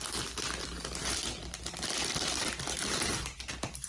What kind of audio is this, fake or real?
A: real